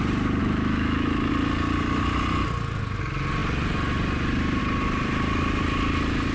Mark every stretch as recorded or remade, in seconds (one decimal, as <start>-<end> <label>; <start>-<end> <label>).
0.0-0.4 recorded; 0.4-1.3 remade; 1.3-6.3 recorded